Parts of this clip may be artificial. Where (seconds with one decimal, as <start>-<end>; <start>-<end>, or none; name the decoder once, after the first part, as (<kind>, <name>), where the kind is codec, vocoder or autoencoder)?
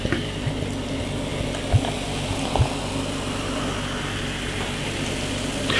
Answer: none